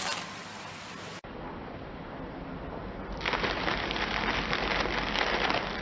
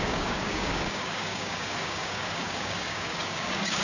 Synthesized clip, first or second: second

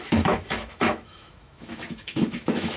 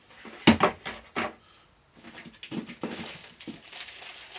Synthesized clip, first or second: first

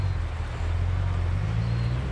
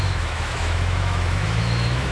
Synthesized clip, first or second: second